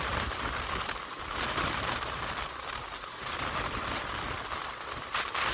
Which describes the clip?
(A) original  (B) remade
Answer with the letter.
A